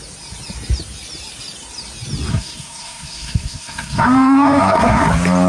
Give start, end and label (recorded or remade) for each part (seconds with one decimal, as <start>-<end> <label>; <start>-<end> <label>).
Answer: 0.0-2.3 recorded; 2.3-5.1 remade; 5.1-5.5 recorded

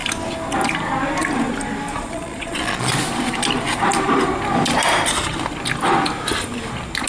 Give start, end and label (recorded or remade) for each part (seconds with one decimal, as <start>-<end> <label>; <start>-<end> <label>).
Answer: 0.0-1.9 recorded; 1.9-2.9 remade; 2.9-7.1 recorded

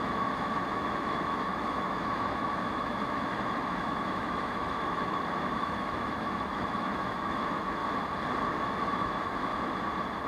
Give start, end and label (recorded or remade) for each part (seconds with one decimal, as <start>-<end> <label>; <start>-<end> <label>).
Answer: 0.0-7.8 remade; 7.8-8.5 recorded; 8.5-9.5 remade; 9.5-10.3 recorded

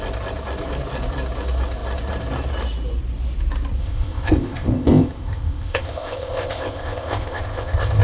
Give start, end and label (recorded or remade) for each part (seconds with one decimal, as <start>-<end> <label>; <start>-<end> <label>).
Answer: 0.0-3.8 recorded; 3.8-8.0 remade

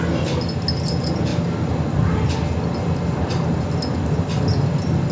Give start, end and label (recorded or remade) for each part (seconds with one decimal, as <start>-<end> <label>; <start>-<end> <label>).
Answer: 0.0-5.1 recorded